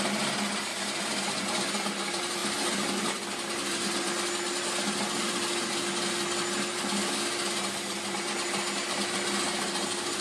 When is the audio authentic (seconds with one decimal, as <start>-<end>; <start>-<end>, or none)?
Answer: 0.0-0.7; 1.3-10.2